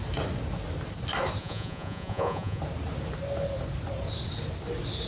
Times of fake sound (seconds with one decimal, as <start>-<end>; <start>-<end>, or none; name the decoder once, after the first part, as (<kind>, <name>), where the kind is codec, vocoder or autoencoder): 1.4-2.6 (vocoder, Vocos)